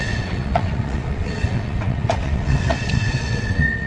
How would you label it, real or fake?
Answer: fake